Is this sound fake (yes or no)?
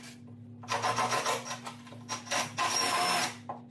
no